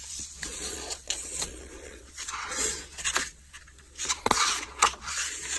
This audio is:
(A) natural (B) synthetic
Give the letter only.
B